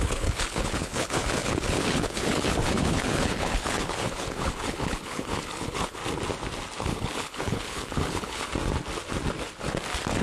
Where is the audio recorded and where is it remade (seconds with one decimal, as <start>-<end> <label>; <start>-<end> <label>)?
0.0-6.0 remade; 6.0-6.8 recorded; 6.8-8.5 remade; 8.5-10.2 recorded